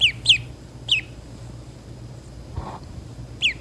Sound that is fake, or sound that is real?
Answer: real